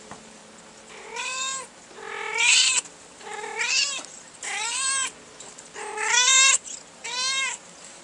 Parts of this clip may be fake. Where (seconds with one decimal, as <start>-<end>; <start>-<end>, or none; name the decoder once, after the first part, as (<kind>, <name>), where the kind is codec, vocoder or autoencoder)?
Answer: 0.0-0.4 (vocoder, BigVGAN v2); 5.2-6.3

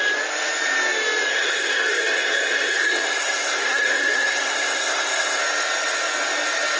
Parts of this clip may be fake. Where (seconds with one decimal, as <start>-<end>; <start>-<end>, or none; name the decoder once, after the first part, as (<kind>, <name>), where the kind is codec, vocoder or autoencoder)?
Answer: 1.3-5.4 (codec, SNAC)

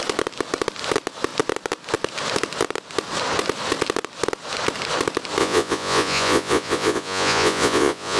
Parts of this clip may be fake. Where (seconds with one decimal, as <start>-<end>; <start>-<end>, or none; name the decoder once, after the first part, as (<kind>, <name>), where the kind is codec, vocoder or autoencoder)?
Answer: 5.4-8.2 (vocoder, Vocos)

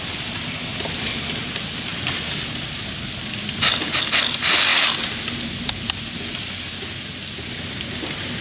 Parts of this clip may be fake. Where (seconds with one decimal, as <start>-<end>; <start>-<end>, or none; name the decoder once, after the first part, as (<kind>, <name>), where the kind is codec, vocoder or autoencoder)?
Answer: none

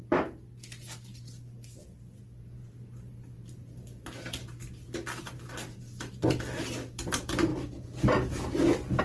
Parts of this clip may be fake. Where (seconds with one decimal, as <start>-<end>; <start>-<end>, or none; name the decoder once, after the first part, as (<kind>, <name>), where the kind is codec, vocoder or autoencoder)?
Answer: 0.0-4.6 (vocoder, BigVGAN v2); 5.2-7.5